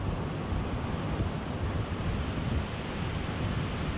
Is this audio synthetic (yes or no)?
no